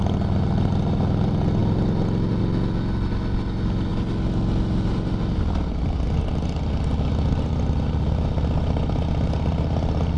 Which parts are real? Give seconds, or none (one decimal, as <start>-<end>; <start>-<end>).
0.0-10.2